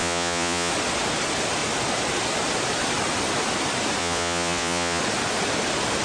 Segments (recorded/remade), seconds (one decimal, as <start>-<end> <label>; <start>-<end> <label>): 0.0-0.7 remade; 0.7-4.0 recorded; 4.0-5.0 remade; 5.0-6.0 recorded